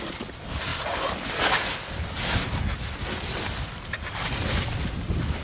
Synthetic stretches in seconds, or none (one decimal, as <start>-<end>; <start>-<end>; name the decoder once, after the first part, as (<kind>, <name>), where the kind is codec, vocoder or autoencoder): none